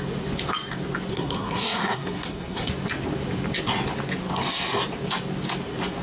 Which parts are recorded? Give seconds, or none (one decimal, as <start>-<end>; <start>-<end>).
0.0-1.1; 2.7-6.0